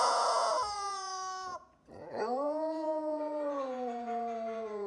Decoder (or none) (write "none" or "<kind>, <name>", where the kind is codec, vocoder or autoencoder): vocoder, Vocos